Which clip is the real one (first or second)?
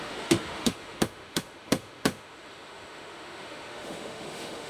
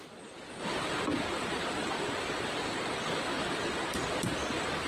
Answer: second